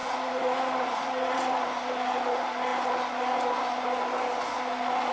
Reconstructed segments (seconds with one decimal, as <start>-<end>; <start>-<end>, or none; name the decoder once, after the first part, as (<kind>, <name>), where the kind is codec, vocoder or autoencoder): 0.0-1.6 (vocoder, Vocos)